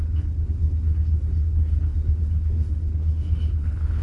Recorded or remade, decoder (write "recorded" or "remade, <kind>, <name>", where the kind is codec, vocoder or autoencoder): remade, codec, HILCodec